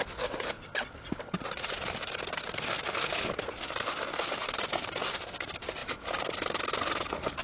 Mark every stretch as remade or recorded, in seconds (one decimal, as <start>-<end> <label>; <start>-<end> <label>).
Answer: 0.0-4.1 recorded; 4.1-5.0 remade; 5.0-7.4 recorded